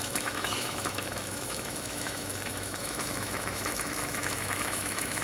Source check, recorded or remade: remade